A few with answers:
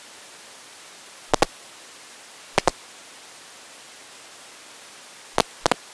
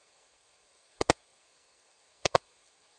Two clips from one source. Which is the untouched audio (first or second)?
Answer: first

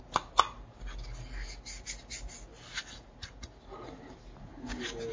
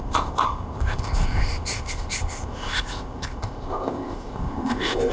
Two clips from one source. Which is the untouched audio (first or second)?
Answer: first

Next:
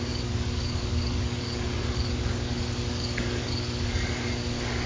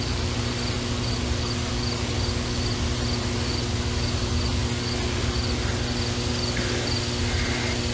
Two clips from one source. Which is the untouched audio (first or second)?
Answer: second